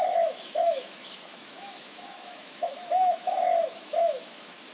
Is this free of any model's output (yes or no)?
no